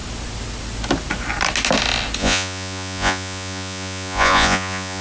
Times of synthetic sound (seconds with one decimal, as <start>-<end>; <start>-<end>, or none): 2.2-5.0